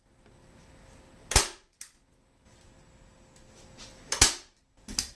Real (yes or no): yes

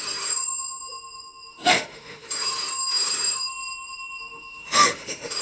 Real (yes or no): no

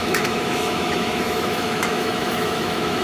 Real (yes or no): no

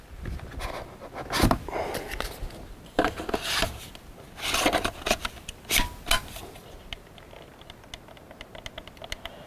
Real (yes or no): yes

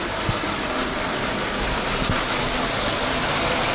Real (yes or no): yes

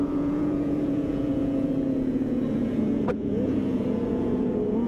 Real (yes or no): no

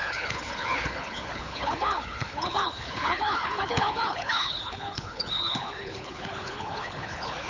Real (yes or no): no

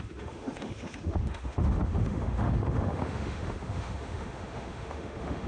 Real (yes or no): no